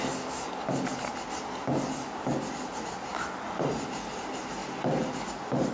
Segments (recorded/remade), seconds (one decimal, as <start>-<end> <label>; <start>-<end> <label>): 0.0-5.7 recorded